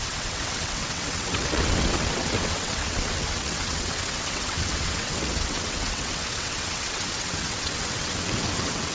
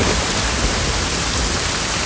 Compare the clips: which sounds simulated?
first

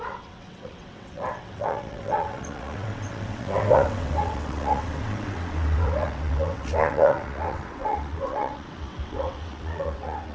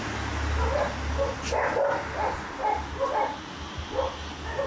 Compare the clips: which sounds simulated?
first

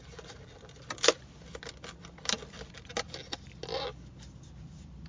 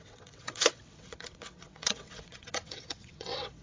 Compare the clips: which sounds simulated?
second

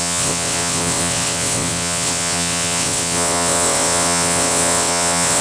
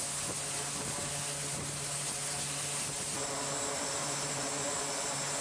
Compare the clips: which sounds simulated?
first